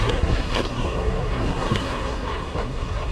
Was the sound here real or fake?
fake